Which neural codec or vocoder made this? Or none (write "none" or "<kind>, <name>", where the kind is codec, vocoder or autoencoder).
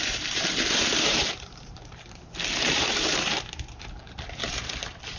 vocoder, BigVGAN v2